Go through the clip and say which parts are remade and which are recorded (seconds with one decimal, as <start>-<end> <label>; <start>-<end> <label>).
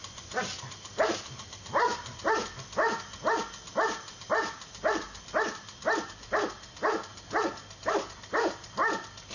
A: 0.0-0.6 remade; 0.6-9.3 recorded